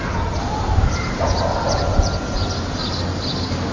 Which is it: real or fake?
real